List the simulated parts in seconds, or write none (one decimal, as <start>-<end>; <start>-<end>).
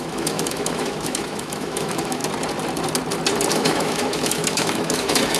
0.0-2.2; 3.5-5.4